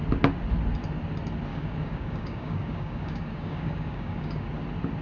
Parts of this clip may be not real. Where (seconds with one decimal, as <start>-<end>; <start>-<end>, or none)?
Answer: 1.5-4.5